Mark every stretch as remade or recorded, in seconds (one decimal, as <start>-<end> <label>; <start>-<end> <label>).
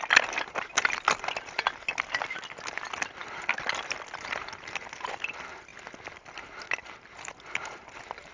0.0-8.3 recorded